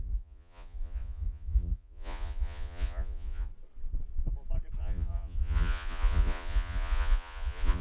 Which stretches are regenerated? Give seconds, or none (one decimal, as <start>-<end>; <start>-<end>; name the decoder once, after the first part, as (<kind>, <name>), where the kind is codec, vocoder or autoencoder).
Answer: 0.0-3.5 (vocoder, Vocos); 4.8-7.8

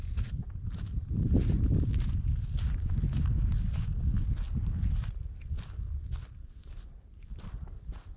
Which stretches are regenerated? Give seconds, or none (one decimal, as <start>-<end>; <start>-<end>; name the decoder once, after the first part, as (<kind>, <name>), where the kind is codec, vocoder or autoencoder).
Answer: none

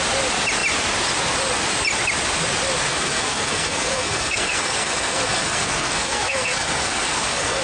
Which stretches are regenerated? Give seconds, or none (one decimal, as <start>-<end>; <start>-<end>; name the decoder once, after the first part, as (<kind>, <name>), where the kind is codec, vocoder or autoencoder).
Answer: 2.9-7.6 (codec, SNAC)

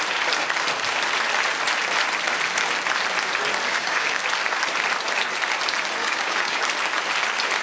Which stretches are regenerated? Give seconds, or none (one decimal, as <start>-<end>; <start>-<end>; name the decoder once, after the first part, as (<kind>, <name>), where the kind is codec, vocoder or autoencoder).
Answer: 3.7-4.2 (codec, DAC); 6.0-6.6

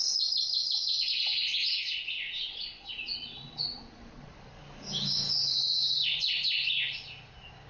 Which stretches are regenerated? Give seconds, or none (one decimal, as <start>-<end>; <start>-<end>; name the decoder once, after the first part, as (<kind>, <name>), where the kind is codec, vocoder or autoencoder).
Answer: 1.1-4.5 (vocoder, Vocos); 5.5-6.3

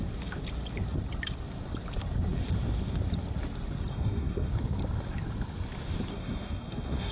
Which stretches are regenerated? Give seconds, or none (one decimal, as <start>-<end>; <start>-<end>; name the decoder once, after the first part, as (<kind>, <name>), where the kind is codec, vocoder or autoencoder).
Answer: 3.9-4.5 (codec, SNAC); 6.1-7.1

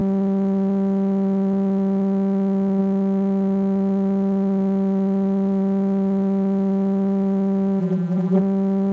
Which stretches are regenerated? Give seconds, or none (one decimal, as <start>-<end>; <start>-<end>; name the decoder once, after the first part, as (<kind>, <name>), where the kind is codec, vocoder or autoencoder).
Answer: 7.8-8.4 (vocoder, BigVGAN v2)

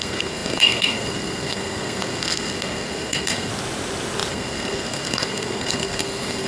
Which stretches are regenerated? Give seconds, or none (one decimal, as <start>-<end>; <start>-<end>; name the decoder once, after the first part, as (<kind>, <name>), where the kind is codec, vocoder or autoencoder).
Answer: 0.0-3.5 (codec, SNAC); 4.3-6.5